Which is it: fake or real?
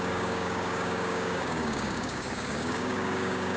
fake